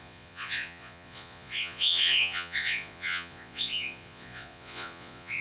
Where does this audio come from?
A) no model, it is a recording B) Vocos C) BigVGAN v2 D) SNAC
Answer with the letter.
B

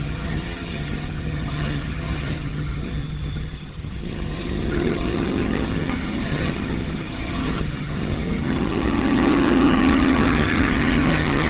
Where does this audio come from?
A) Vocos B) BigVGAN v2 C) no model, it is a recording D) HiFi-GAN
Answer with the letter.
D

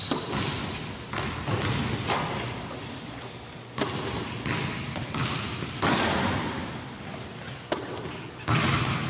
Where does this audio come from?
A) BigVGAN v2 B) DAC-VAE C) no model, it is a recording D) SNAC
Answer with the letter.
C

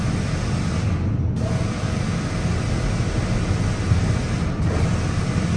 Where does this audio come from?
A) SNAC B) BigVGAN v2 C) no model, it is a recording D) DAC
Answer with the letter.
C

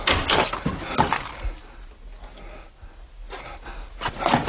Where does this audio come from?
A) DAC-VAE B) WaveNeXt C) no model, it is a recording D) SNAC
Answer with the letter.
C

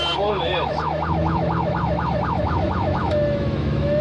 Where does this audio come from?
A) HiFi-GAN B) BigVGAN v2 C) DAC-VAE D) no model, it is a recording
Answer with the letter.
C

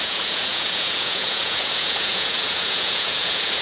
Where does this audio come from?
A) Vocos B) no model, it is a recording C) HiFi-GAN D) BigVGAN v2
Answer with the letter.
A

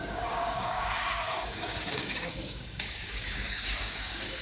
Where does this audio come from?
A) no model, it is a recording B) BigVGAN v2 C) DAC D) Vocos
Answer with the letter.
C